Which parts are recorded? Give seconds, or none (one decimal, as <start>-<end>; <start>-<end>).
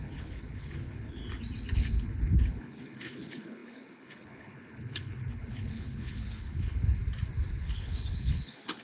1.2-1.7; 7.0-7.6